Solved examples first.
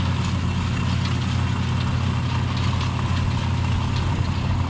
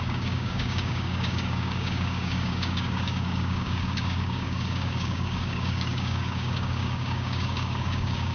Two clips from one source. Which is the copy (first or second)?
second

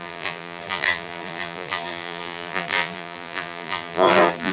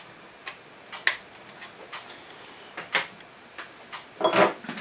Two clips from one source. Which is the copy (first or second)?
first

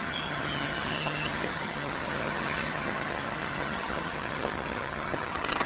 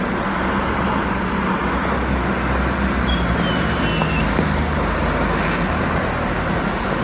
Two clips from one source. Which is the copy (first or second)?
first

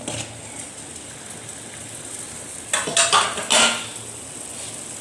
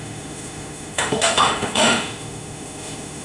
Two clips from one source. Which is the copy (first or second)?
second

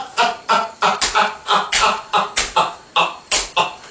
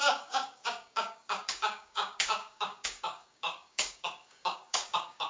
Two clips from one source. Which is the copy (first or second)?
second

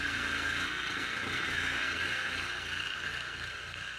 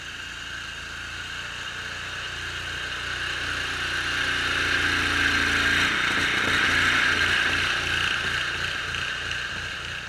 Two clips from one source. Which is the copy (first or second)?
first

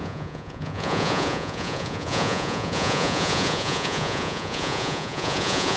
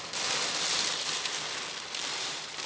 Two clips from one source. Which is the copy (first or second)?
first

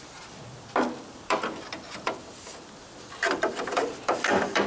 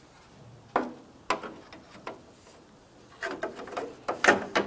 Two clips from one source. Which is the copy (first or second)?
first